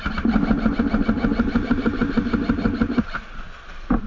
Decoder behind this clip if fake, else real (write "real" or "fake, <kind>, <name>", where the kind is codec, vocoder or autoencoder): real